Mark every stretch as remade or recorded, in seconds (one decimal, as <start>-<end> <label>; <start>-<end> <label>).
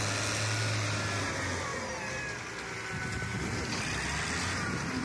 0.0-5.0 recorded